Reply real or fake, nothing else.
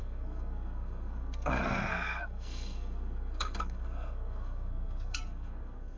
fake